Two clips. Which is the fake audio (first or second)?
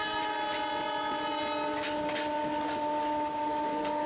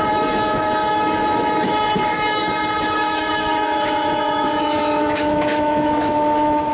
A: second